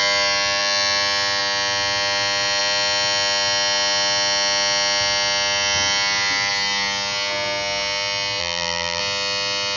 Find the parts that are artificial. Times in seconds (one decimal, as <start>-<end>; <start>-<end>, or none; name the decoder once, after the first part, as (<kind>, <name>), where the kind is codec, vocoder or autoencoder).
8.4-9.0 (vocoder, BigVGAN v2)